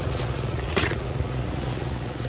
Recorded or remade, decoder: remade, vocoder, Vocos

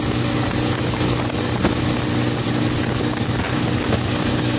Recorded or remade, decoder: recorded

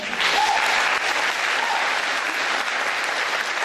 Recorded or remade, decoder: recorded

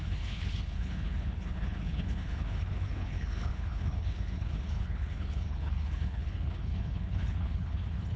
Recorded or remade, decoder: remade, codec, HILCodec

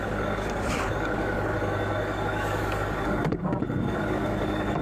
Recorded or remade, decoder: remade, codec, DAC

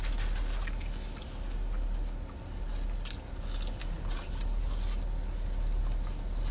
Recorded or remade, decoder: recorded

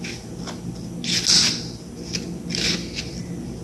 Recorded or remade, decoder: recorded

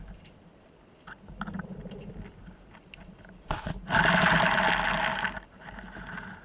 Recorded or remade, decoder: recorded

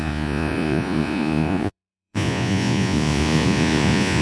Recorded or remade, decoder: remade, vocoder, Vocos